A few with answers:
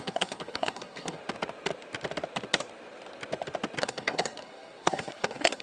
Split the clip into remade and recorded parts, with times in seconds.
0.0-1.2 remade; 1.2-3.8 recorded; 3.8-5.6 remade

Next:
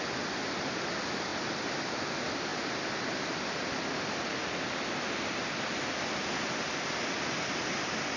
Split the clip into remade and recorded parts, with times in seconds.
0.0-8.2 recorded

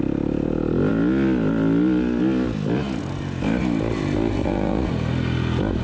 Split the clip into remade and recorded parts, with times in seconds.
0.0-4.4 recorded; 4.4-4.9 remade; 4.9-5.8 recorded

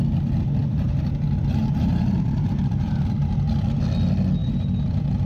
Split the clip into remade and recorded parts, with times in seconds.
0.0-0.6 recorded; 0.6-3.8 remade; 3.8-4.4 recorded; 4.4-5.3 remade

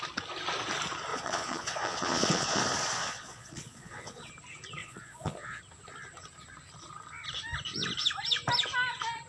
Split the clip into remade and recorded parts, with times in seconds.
0.0-1.1 recorded; 1.1-2.6 remade; 2.6-3.0 recorded; 3.0-4.3 remade; 4.3-4.8 recorded; 4.8-5.6 remade; 5.6-9.3 recorded

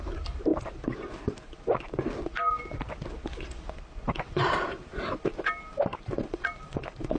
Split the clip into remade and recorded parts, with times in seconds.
0.0-0.5 remade; 0.5-3.9 recorded; 3.9-4.9 remade; 4.9-5.7 recorded; 5.7-7.2 remade

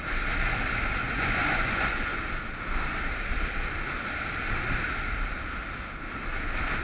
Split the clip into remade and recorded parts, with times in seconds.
0.0-1.0 recorded; 1.0-2.2 remade; 2.2-6.8 recorded